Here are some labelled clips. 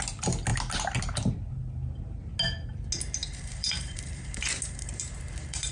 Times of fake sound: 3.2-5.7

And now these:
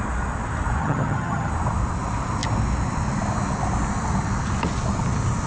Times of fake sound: 0.8-1.5